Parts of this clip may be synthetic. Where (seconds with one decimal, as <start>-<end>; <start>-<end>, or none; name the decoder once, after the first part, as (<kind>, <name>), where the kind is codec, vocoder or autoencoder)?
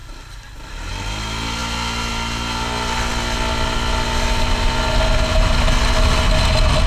none